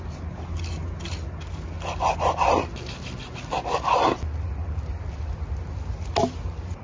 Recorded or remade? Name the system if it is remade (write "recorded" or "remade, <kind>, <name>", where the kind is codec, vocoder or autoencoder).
recorded